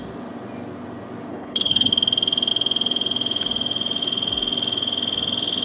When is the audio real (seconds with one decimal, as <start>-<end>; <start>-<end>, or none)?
0.0-1.3; 1.9-5.6